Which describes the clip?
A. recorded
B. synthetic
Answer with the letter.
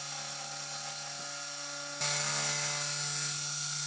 A